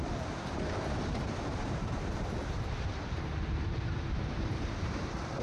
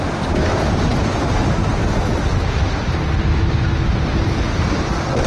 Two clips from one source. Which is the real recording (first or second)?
second